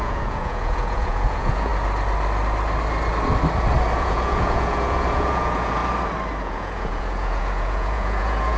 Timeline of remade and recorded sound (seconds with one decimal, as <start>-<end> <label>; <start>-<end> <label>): 0.0-1.7 remade; 1.7-4.0 recorded; 4.0-5.8 remade; 5.8-6.4 recorded; 6.4-8.6 remade